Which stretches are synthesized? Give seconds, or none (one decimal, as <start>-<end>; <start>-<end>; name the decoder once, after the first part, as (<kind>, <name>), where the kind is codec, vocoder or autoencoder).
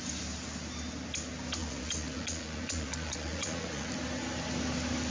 1.6-3.9 (vocoder, Vocos)